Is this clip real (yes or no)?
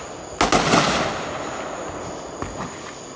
yes